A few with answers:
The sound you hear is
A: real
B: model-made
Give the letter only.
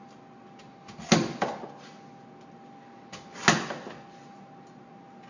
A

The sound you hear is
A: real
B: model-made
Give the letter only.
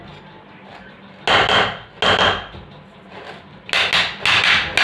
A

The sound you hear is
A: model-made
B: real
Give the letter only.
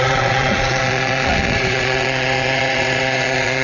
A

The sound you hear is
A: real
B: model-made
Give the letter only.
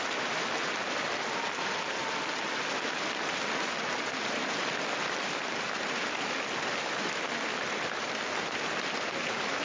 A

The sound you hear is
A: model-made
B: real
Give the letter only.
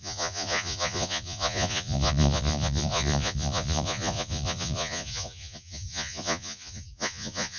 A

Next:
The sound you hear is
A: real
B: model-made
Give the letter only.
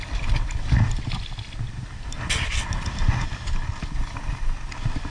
A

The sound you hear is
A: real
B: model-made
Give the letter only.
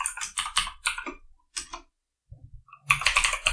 A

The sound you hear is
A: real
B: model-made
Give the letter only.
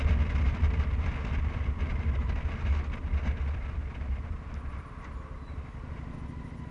A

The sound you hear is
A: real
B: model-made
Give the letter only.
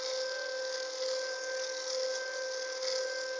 A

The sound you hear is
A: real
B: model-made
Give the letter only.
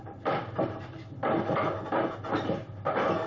A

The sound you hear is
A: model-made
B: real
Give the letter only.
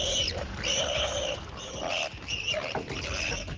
B